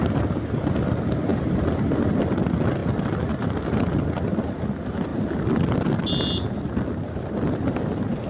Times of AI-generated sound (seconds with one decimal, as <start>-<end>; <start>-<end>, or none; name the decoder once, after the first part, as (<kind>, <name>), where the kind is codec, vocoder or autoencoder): none